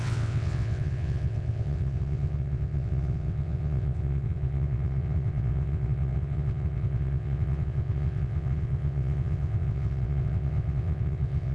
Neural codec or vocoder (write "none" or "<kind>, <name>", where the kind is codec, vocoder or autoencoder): vocoder, WaveNeXt